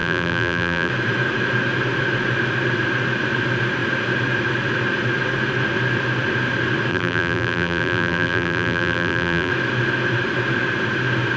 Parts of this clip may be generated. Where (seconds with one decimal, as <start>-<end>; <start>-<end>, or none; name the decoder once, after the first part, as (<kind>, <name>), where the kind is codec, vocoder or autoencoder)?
0.0-0.9 (vocoder, BigVGAN v2); 6.9-9.5

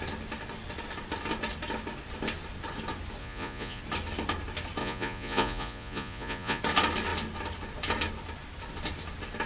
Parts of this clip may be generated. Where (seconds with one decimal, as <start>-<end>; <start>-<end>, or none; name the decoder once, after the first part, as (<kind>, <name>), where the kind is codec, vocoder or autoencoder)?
3.2-3.8 (vocoder, Vocos); 4.8-6.6

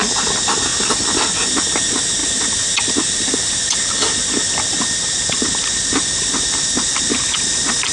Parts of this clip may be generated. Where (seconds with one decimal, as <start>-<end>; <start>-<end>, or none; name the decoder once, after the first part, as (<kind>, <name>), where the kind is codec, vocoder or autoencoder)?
none

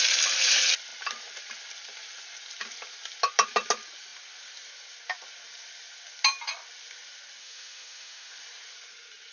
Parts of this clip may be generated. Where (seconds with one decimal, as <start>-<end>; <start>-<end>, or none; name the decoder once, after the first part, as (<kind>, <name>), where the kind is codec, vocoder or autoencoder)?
7.4-8.3 (autoencoder, DAC-VAE)